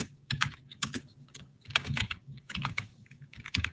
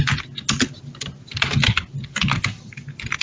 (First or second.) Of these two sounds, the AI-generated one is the first